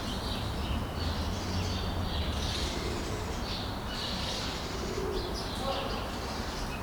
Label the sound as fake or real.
real